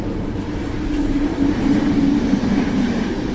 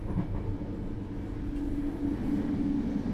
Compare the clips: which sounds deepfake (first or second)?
first